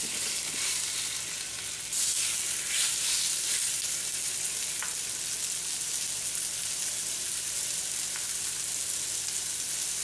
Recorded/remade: recorded